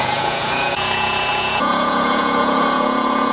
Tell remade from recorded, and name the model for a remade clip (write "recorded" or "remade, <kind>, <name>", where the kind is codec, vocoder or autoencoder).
remade, vocoder, Vocos